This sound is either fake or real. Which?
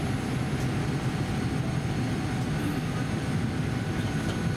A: real